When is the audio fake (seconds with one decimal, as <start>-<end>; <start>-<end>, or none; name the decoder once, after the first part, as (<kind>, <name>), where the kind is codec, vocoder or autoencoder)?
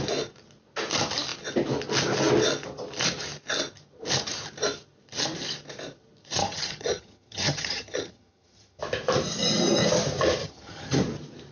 6.4-8.8 (vocoder, HiFi-GAN); 10.4-11.0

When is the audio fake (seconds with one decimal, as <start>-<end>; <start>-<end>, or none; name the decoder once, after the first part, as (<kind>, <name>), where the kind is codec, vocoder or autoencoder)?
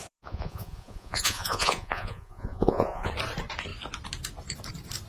0.0-3.1 (vocoder, Vocos)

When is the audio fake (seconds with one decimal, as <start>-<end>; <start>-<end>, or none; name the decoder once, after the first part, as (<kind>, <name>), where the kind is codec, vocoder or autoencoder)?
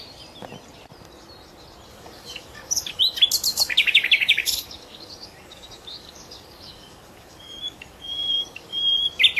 1.9-3.0 (codec, DAC); 3.5-8.8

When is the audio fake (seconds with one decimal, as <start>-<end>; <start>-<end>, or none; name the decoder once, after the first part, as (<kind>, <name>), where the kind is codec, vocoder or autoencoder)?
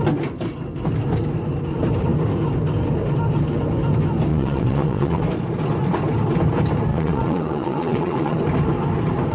4.3-5.2 (vocoder, WaveNeXt); 6.9-8.4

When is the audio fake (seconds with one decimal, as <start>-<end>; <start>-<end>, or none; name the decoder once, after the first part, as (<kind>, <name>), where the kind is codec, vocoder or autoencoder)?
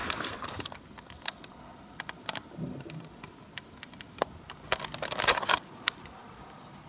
none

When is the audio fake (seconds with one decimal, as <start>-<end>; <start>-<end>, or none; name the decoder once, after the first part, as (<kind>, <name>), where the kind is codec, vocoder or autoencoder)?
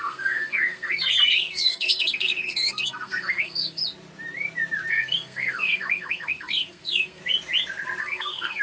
0.0-3.8 (codec, SNAC); 4.9-7.2; 8.0-8.6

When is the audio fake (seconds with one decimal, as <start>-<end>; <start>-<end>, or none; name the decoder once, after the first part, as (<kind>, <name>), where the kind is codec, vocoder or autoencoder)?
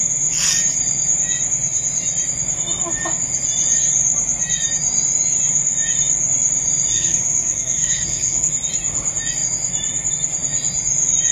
6.9-8.5 (codec, SNAC)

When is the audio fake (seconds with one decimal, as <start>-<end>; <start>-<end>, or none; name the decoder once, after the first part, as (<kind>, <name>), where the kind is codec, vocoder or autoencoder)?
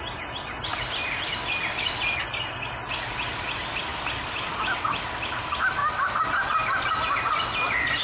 none